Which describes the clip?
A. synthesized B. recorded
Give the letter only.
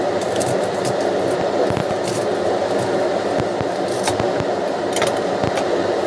B